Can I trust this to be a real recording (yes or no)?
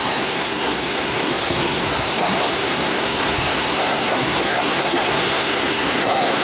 no